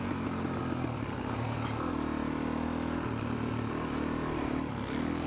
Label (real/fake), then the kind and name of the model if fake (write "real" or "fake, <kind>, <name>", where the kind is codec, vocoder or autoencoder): real